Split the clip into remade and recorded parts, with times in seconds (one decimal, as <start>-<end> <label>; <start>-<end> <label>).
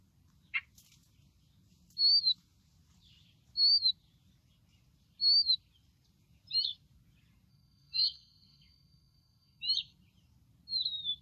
0.0-7.5 recorded; 7.5-9.6 remade; 9.6-11.2 recorded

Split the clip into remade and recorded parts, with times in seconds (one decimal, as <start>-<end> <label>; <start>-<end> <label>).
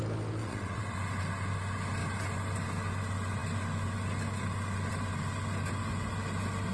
0.0-0.4 recorded; 0.4-1.0 remade; 1.0-6.7 recorded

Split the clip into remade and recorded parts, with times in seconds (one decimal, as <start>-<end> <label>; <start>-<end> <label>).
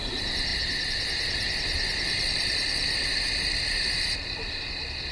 0.0-5.1 recorded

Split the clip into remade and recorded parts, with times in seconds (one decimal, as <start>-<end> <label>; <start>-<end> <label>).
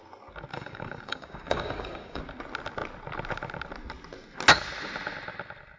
0.0-0.5 recorded; 0.5-2.2 remade; 2.2-5.8 recorded